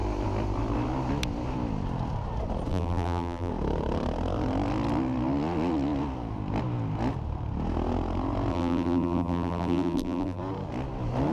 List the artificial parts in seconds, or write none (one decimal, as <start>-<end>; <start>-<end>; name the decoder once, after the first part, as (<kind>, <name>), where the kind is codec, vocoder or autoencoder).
2.7-3.5 (vocoder, BigVGAN v2); 8.5-10.4